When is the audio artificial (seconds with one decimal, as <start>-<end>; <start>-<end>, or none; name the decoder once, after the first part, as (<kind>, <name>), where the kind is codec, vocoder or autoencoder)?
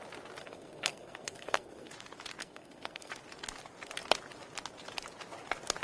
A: 0.4-1.9 (codec, SNAC); 2.4-3.1